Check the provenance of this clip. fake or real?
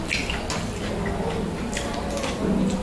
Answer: real